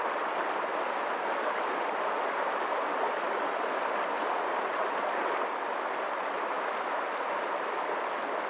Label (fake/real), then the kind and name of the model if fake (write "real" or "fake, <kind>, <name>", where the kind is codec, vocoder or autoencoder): real